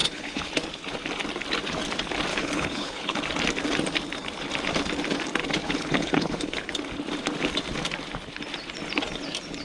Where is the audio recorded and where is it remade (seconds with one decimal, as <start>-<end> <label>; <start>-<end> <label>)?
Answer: 0.0-0.5 remade; 0.5-2.3 recorded; 2.3-3.2 remade; 3.2-5.6 recorded; 5.6-6.7 remade; 6.7-9.6 recorded